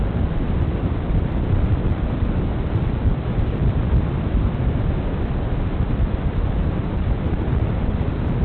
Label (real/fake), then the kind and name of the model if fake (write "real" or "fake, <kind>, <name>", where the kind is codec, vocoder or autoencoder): fake, vocoder, BigVGAN v2